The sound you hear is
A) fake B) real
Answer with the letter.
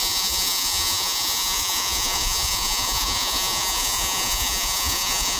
A